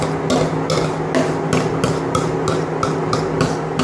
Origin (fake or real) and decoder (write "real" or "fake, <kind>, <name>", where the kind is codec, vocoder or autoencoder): real